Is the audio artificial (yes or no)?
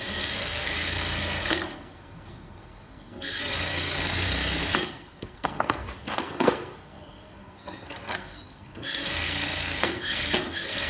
yes